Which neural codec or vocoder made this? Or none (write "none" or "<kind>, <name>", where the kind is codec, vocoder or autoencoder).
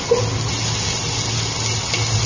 none